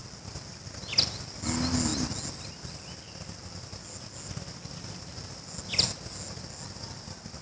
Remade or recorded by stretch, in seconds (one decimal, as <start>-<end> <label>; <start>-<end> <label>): 0.0-7.4 recorded